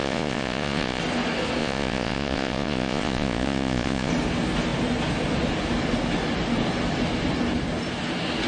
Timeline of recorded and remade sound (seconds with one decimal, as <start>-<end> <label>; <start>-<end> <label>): 0.0-1.0 remade; 1.0-1.6 recorded; 1.6-4.1 remade; 4.1-8.5 recorded